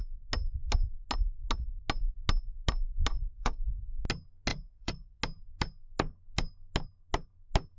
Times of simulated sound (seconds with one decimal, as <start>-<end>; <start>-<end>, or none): 3.1-3.9; 4.5-5.2